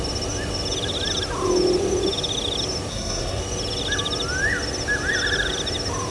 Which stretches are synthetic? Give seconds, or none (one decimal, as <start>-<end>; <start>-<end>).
2.9-3.4